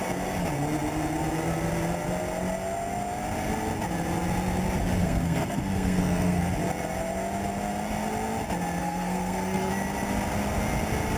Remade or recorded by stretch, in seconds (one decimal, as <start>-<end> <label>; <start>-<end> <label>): 0.0-5.0 recorded; 5.0-6.5 remade; 6.5-8.8 recorded; 8.8-9.7 remade; 9.7-11.2 recorded